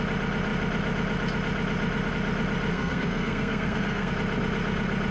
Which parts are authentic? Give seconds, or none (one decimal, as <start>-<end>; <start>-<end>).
0.0-2.7; 4.1-5.1